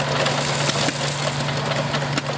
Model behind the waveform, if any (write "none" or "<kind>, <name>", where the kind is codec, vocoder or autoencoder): none